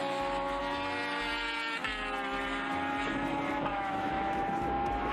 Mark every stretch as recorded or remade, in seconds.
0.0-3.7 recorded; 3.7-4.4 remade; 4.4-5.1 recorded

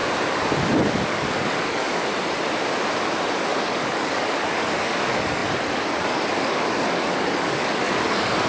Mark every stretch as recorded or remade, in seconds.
0.0-0.9 recorded; 0.9-2.0 remade; 2.0-3.3 recorded; 3.3-8.5 remade

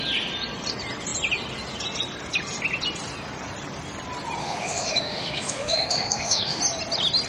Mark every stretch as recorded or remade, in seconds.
0.0-4.4 recorded; 4.4-6.6 remade; 6.6-7.3 recorded

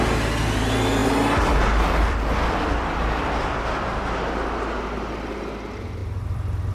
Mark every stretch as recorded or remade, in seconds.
0.0-6.0 recorded; 6.0-6.7 remade

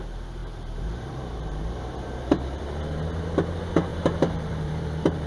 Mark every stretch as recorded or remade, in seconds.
0.0-0.4 recorded; 0.4-2.6 remade; 2.6-3.9 recorded; 3.9-5.3 remade

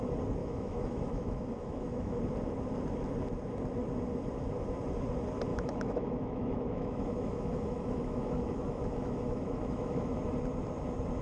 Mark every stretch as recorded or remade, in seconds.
0.0-0.4 recorded; 0.4-2.2 remade; 2.2-5.5 recorded; 5.5-10.2 remade; 10.2-11.2 recorded